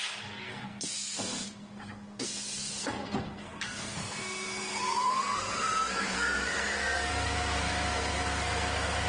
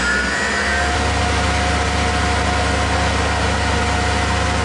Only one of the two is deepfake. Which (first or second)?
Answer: first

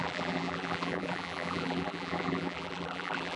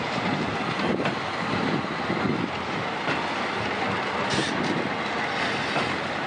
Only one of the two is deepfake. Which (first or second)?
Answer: first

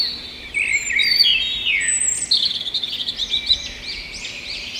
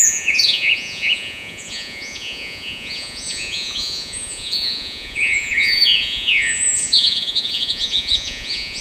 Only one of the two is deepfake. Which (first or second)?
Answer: second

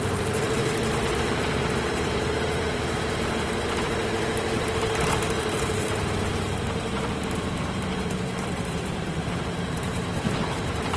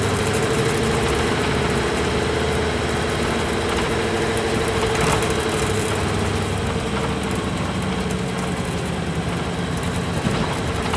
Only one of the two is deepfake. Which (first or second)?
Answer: first